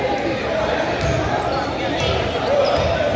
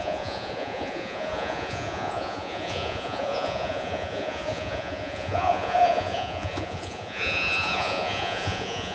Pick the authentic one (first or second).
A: first